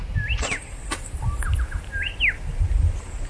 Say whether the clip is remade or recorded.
recorded